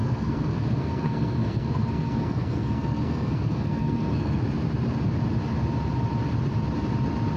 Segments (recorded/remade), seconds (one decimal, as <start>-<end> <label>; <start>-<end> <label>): 0.0-4.4 remade; 4.4-7.4 recorded